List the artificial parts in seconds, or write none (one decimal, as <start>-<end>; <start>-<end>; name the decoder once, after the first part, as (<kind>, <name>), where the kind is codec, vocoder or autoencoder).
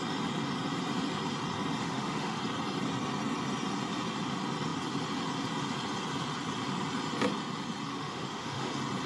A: 1.8-2.4 (autoencoder, DAC-VAE); 7.9-8.7